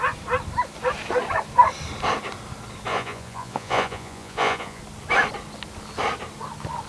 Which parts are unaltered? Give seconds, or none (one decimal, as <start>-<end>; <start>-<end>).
0.0-2.9; 4.8-6.9